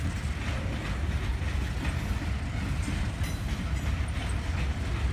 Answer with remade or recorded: recorded